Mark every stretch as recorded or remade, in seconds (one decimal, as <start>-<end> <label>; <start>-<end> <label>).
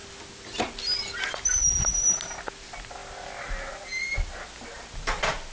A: 0.0-5.5 recorded